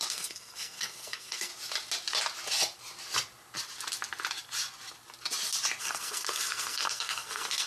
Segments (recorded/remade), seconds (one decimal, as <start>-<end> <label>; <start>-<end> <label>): 0.0-1.5 remade; 1.5-5.8 recorded; 5.8-7.7 remade